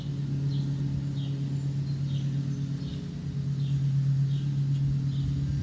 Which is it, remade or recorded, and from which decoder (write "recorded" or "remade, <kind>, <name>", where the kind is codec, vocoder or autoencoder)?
recorded